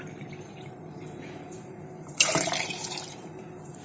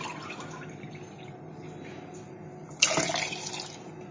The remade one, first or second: first